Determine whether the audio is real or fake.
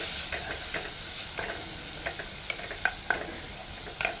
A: real